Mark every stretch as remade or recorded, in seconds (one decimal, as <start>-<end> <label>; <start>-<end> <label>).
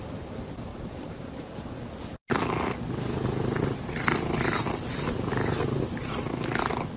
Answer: 0.0-0.7 recorded; 0.7-1.7 remade; 1.7-5.3 recorded; 5.3-5.8 remade; 5.8-7.0 recorded